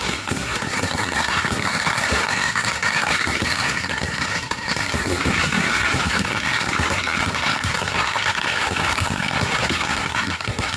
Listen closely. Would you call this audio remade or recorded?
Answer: remade